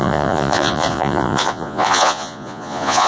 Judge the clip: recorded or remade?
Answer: remade